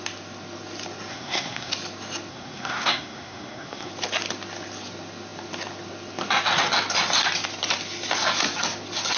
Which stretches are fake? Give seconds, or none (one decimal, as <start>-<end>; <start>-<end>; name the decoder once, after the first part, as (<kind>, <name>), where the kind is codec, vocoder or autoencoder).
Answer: 1.1-1.7 (codec, SNAC); 2.3-3.9